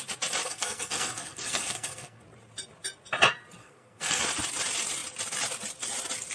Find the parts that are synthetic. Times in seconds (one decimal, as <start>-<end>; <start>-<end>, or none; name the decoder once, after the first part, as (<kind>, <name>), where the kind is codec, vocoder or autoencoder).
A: 0.4-2.2 (codec, SNAC); 3.6-4.2